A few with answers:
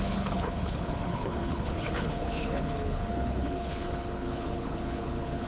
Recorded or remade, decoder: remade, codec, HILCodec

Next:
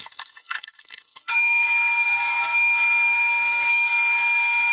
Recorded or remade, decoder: remade, codec, SNAC